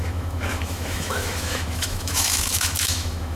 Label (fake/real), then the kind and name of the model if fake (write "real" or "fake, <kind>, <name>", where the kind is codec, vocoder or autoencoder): fake, autoencoder, DAC-VAE